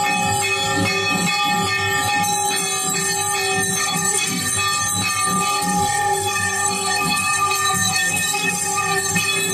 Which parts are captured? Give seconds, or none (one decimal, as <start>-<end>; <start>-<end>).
0.0-3.8; 4.5-5.5